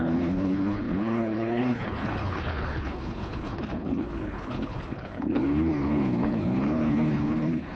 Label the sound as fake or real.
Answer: fake